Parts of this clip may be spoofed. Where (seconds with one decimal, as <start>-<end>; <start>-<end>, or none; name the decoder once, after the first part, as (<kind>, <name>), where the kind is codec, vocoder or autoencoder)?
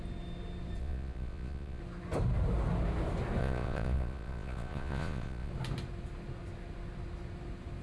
0.8-1.8 (vocoder, Vocos); 3.4-5.5